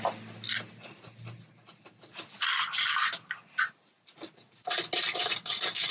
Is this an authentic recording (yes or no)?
yes